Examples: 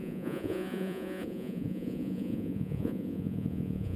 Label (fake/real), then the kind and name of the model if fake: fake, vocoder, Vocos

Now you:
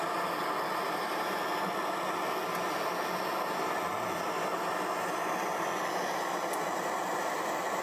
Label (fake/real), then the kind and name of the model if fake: real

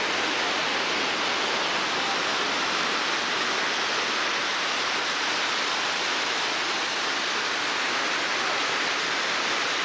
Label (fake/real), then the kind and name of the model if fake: real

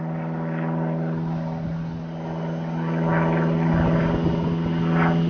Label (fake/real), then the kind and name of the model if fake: real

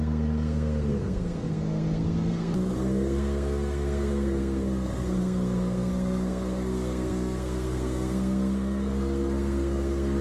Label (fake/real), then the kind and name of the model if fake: fake, codec, SNAC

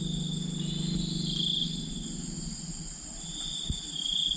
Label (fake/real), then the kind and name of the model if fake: real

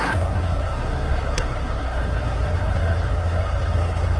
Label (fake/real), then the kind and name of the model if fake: fake, codec, SNAC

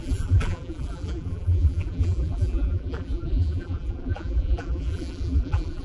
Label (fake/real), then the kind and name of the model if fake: fake, vocoder, BigVGAN v2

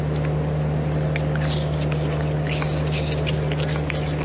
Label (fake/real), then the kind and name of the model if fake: real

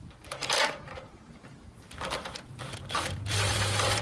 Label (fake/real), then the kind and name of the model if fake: fake, vocoder, BigVGAN v2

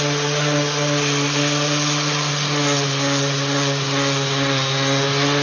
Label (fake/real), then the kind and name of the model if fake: real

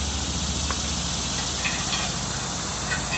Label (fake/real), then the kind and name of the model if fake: real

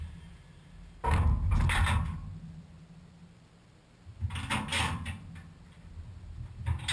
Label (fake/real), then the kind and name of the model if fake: real